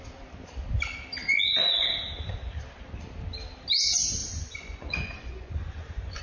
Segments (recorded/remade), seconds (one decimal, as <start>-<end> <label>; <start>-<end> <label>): 0.0-1.3 recorded; 1.3-1.9 remade; 1.9-4.2 recorded; 4.2-6.2 remade